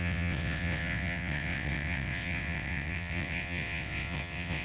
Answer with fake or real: fake